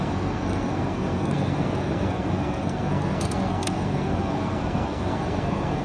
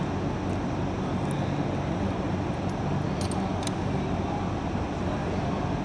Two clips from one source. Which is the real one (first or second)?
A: second